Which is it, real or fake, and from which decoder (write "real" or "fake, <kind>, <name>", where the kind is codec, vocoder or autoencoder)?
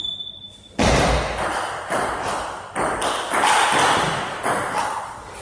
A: real